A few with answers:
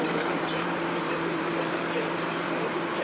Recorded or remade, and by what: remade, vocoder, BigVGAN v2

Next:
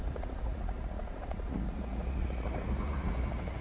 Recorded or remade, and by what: remade, vocoder, Vocos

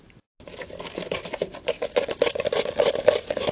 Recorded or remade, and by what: recorded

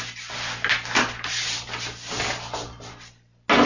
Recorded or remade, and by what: recorded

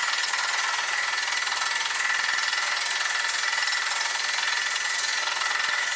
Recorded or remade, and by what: recorded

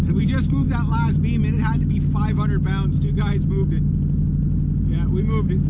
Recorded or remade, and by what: recorded